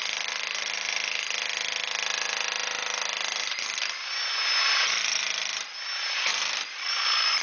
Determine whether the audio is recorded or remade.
recorded